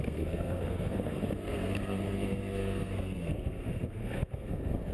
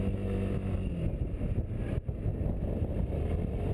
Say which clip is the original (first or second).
second